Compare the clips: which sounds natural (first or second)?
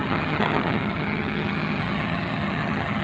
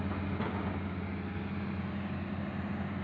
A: second